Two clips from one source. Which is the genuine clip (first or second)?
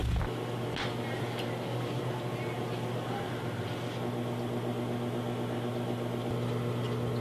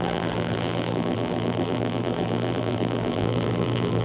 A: first